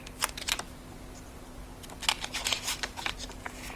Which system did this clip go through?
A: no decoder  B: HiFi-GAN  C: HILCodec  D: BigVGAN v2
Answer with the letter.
A